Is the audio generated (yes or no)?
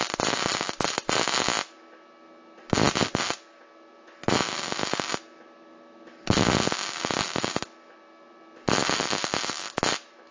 no